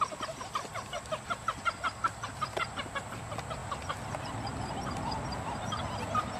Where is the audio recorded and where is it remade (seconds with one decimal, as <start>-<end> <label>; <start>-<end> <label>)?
0.0-6.4 recorded